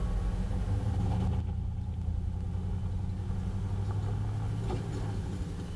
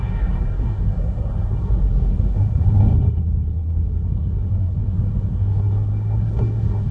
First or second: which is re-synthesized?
second